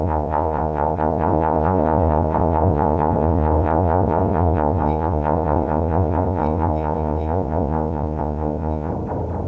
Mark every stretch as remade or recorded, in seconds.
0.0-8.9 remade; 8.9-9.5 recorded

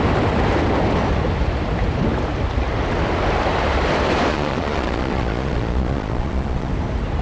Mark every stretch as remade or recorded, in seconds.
0.0-4.3 recorded; 4.3-6.7 remade; 6.7-7.2 recorded

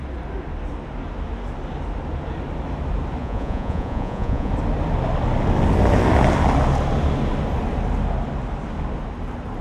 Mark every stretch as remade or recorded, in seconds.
0.0-3.2 recorded; 3.2-4.5 remade; 4.5-9.6 recorded

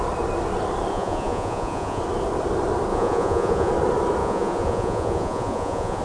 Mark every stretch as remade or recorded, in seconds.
0.0-0.9 recorded; 0.9-2.0 remade; 2.0-2.9 recorded; 2.9-3.7 remade; 3.7-4.2 recorded; 4.2-6.0 remade

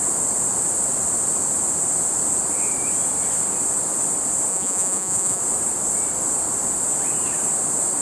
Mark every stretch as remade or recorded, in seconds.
0.0-4.5 recorded; 4.5-5.4 remade; 5.4-8.0 recorded

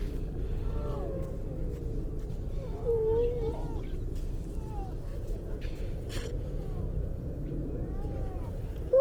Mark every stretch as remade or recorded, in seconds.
0.0-5.1 recorded; 5.1-8.6 remade; 8.6-9.0 recorded